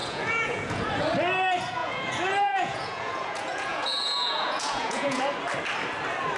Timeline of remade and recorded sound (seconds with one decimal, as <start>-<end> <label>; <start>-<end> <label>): 0.0-0.8 remade; 0.8-1.8 recorded; 1.8-5.2 remade; 5.2-6.4 recorded